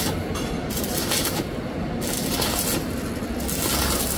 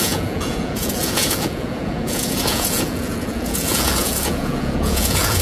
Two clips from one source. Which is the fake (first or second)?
second